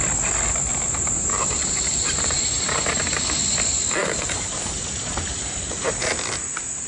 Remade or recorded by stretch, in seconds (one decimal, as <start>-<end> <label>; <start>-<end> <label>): 0.0-0.7 recorded; 0.7-3.2 remade; 3.2-4.0 recorded; 4.0-5.9 remade; 5.9-6.9 recorded